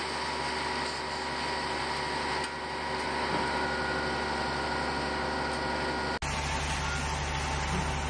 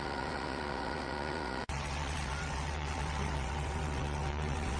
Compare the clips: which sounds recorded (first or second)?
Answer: first